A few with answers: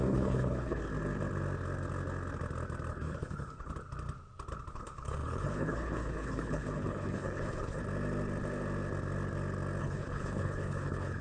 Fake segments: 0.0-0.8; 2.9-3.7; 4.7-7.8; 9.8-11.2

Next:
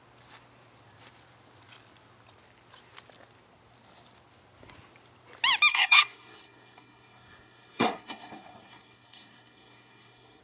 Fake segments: 5.7-10.4

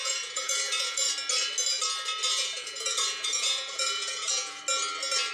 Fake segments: 0.0-1.1; 2.3-4.6